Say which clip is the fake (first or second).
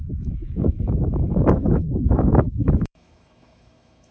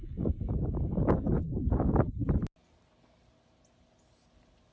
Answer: first